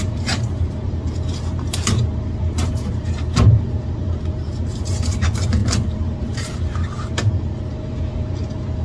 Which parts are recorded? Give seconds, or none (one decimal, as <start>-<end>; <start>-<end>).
none